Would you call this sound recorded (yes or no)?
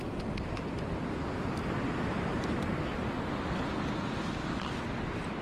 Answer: yes